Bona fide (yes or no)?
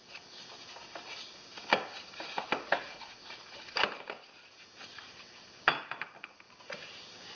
yes